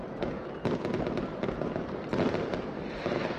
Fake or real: real